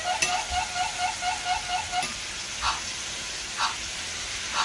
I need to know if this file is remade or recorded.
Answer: recorded